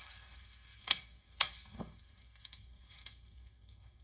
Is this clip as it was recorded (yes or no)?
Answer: no